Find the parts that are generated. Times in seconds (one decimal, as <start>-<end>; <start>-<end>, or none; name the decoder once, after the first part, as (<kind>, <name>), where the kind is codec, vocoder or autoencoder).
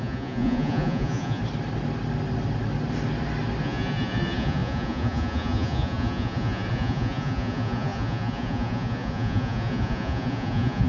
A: 0.0-1.4 (vocoder, Vocos); 3.6-10.9